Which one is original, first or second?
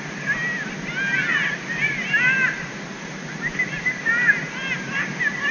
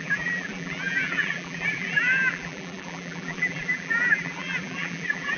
first